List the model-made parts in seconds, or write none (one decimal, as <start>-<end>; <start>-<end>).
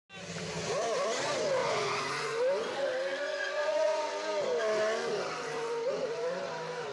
1.6-2.4; 3.0-4.1